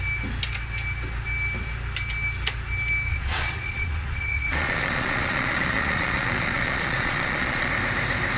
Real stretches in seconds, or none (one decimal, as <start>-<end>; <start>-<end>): 0.0-3.1; 7.7-8.4